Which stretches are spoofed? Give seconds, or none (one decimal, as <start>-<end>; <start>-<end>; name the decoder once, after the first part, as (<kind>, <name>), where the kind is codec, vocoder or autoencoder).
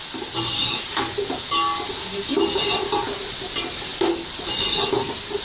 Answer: none